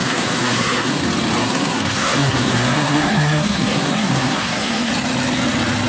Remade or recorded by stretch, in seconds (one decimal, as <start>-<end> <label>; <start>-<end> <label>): 0.0-1.0 remade; 1.0-1.4 recorded; 1.4-4.9 remade; 4.9-5.9 recorded